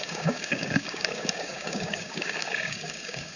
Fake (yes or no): yes